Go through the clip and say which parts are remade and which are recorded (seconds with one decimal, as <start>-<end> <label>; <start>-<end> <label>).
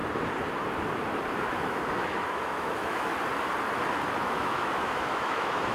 0.0-1.5 recorded; 1.5-3.1 remade; 3.1-4.1 recorded; 4.1-5.7 remade